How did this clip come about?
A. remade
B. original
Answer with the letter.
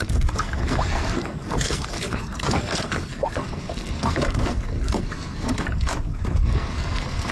A